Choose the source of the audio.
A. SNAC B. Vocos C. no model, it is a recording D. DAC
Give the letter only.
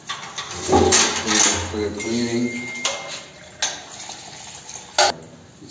C